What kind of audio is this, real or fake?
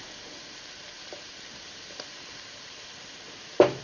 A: fake